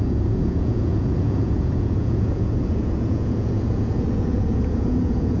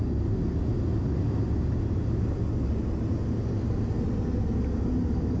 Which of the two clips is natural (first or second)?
second